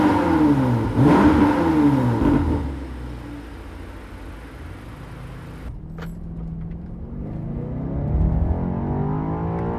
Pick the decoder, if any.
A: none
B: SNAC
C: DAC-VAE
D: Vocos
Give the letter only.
A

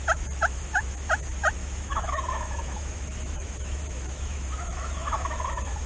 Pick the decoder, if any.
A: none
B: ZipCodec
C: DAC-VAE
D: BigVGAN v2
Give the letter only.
C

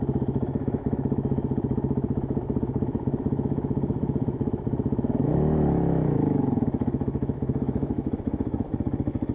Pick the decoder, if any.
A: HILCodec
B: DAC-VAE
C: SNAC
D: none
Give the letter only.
B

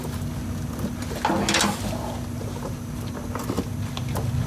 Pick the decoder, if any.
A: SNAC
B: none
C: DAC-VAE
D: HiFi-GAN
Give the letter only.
B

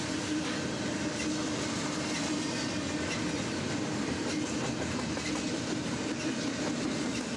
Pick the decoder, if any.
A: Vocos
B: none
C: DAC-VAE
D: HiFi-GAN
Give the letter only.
B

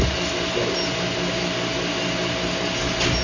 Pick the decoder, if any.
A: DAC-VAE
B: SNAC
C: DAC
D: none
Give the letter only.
D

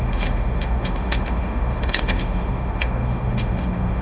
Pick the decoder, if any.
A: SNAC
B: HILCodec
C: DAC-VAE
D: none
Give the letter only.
C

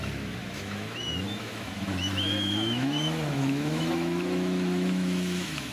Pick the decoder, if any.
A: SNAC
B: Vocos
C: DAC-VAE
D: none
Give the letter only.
C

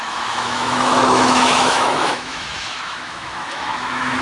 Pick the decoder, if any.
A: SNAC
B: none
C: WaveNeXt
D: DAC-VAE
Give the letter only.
D